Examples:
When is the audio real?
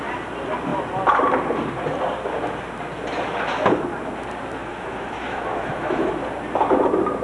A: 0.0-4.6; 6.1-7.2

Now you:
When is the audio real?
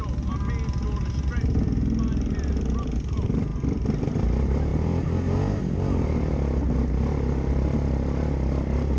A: 0.0-9.0